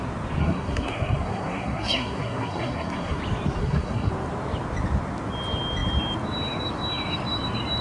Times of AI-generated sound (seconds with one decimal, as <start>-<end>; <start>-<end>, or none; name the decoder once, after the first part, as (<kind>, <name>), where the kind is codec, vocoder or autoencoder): 0.4-3.2 (codec, SNAC); 3.6-4.1